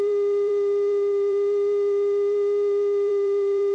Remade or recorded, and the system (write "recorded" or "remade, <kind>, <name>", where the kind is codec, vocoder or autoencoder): remade, vocoder, BigVGAN v2